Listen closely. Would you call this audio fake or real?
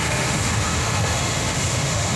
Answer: fake